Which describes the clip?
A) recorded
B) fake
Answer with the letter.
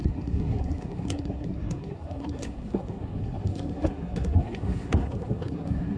B